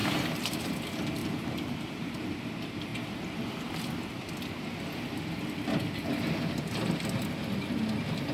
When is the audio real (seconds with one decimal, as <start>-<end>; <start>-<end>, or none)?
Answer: 0.6-1.2; 2.1-8.3